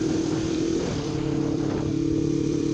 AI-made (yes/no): yes